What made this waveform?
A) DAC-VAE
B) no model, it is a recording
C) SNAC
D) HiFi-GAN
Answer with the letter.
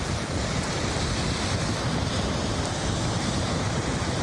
B